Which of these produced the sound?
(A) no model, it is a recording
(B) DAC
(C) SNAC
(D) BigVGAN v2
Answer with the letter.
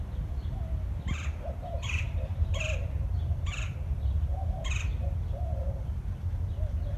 D